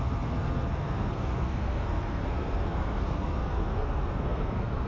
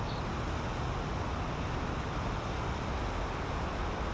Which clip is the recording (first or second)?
second